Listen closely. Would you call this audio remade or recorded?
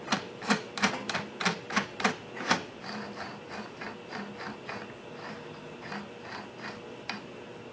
recorded